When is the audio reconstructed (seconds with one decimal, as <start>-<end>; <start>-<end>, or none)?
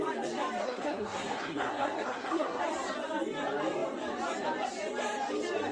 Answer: 0.6-2.6